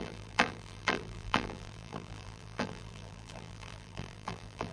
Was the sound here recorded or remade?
remade